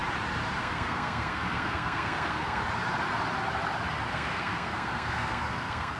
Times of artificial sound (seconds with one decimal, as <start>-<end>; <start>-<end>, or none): 0.6-2.6; 4.1-6.0